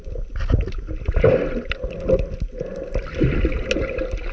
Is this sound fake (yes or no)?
no